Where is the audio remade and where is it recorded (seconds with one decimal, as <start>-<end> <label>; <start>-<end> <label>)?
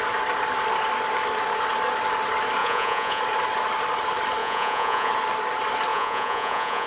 0.0-2.6 recorded; 2.6-3.2 remade; 3.2-4.4 recorded; 4.4-5.1 remade; 5.1-5.9 recorded; 5.9-6.9 remade